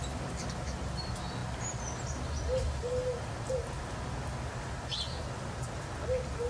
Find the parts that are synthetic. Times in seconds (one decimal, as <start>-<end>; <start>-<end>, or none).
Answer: none